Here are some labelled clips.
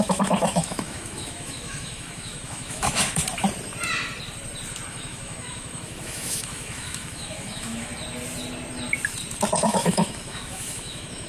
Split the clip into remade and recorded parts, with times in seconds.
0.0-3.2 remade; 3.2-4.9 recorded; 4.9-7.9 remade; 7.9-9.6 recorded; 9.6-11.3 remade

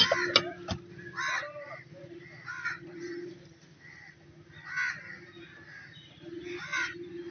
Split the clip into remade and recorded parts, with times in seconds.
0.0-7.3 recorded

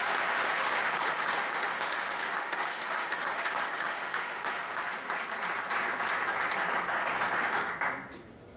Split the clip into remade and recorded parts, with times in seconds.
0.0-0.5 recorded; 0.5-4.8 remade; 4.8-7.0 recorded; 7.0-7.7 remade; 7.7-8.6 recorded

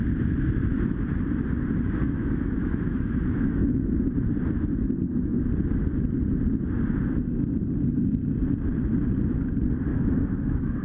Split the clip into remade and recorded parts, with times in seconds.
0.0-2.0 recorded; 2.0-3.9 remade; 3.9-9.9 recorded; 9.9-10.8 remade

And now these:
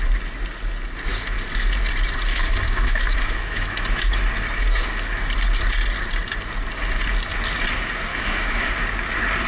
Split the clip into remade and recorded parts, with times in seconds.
0.0-2.3 recorded; 2.3-4.1 remade; 4.1-8.1 recorded; 8.1-8.7 remade; 8.7-9.5 recorded